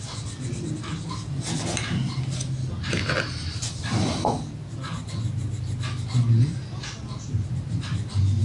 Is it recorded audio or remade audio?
recorded